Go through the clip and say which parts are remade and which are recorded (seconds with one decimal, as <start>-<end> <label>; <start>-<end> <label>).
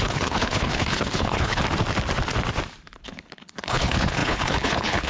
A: 0.0-1.6 remade; 1.6-3.0 recorded; 3.0-5.1 remade